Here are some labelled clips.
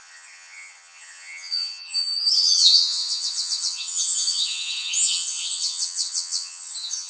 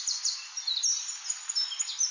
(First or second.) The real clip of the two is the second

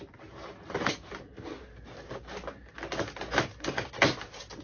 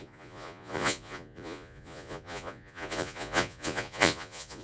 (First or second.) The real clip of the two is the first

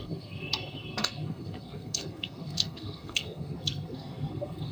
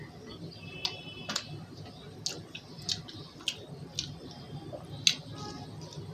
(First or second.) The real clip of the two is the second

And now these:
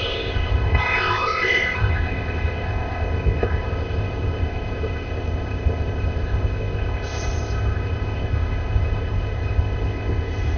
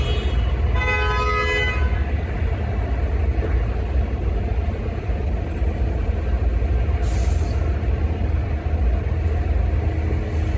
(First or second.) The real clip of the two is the second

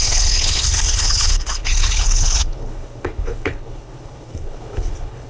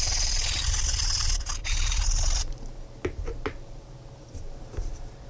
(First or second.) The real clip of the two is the second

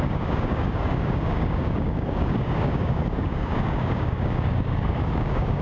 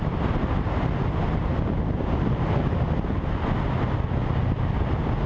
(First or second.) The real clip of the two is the second